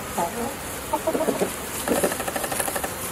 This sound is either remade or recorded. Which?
remade